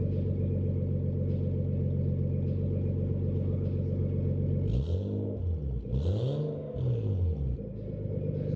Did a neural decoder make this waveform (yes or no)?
no